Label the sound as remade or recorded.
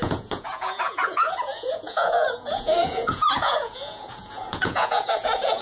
remade